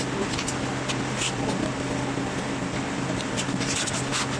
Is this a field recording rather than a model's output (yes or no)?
yes